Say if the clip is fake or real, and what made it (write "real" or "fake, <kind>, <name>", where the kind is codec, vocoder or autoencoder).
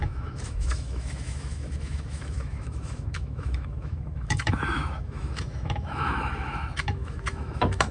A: fake, autoencoder, DAC-VAE